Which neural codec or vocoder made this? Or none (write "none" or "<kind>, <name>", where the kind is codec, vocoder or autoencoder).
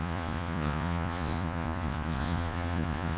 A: vocoder, Vocos